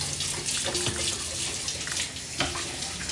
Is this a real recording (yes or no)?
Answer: yes